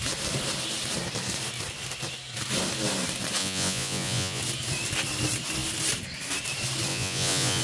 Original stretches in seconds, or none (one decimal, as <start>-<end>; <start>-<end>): 0.0-3.4; 4.4-6.9